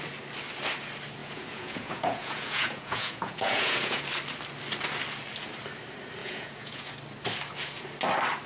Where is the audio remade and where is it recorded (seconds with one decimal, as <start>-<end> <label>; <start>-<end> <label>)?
0.0-1.2 recorded; 1.2-4.0 remade; 4.0-6.2 recorded; 6.2-6.9 remade; 6.9-8.5 recorded